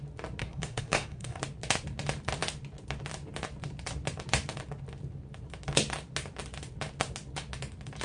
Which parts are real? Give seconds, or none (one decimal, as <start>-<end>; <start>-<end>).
0.0-0.4; 1.4-8.0